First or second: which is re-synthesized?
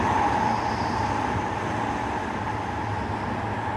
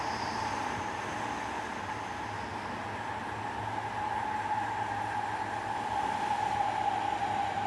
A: first